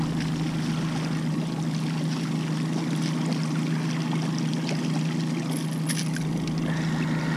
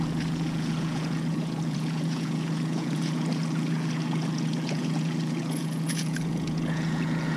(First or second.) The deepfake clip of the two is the second